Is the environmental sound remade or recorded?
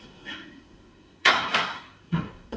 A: remade